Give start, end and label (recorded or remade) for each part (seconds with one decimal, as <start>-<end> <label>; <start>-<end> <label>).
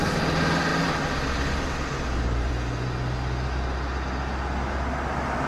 0.0-0.7 recorded; 0.7-2.5 remade; 2.5-5.5 recorded